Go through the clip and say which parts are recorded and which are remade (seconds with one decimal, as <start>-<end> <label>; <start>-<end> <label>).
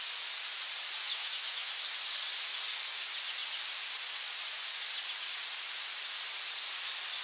0.0-1.1 recorded; 1.1-1.7 remade; 1.7-7.2 recorded